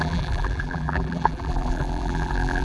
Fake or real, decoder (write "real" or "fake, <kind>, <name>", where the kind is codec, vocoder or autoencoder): fake, vocoder, BigVGAN v2